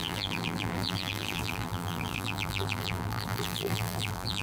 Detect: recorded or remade remade